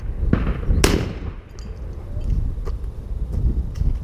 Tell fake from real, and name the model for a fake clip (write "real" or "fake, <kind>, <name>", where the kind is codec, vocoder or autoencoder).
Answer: real